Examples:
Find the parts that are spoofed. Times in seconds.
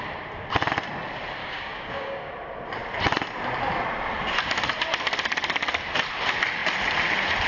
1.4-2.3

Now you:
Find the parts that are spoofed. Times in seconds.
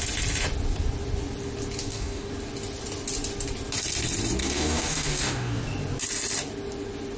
1.8-2.3; 4.4-5.6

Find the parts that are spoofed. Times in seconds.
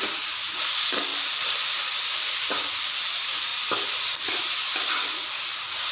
0.0-3.5; 5.1-5.9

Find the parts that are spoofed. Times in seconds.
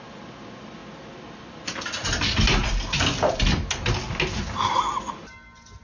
none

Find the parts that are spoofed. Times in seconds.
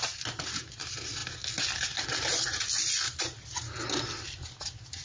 none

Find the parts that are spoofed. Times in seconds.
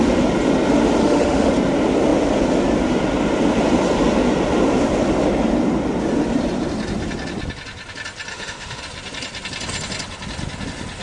1.0-1.5; 8.3-8.8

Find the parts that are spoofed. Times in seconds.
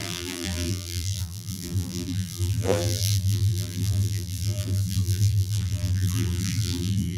0.0-7.2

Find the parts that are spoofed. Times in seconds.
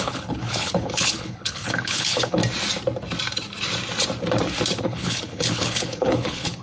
0.0-2.4; 4.8-6.6